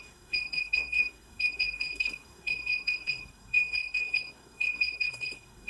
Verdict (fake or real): fake